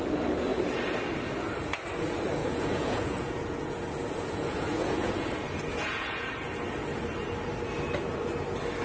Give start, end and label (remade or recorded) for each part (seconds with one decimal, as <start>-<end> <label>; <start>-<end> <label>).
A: 0.0-2.4 recorded; 2.4-6.3 remade; 6.3-8.8 recorded